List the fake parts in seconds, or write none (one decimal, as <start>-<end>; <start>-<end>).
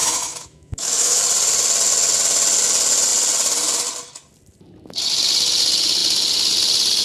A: 0.0-1.2